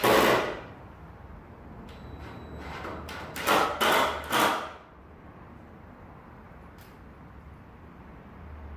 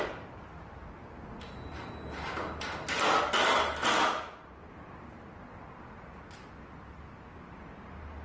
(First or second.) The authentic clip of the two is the second